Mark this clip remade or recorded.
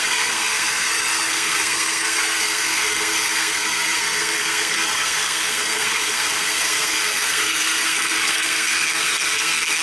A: remade